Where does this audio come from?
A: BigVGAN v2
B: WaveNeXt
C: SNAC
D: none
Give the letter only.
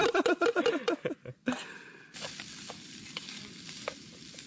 A